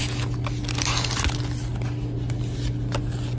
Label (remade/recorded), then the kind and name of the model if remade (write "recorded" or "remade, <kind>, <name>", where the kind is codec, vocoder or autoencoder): recorded